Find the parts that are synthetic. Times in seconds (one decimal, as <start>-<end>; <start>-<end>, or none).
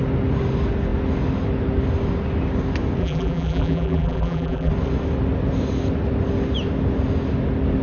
3.0-4.7